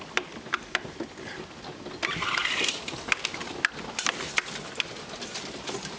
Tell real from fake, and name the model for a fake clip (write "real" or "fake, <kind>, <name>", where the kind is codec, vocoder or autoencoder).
real